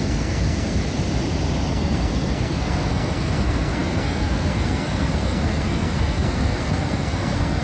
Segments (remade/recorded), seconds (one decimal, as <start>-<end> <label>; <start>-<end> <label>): 0.0-0.8 remade; 0.8-1.7 recorded; 1.7-7.6 remade